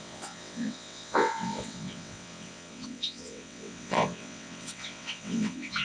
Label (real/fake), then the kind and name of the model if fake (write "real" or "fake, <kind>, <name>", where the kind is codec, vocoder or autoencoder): fake, vocoder, WaveNeXt